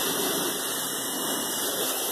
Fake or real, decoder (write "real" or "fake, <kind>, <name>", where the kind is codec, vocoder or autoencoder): real